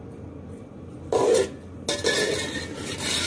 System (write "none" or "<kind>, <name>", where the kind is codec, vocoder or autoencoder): none